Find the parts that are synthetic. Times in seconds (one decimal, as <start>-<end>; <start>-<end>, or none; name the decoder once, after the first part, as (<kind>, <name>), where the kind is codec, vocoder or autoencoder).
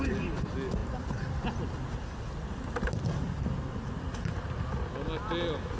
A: none